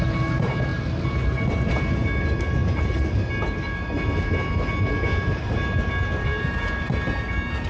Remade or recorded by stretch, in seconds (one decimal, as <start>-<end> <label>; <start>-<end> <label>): 0.0-7.7 recorded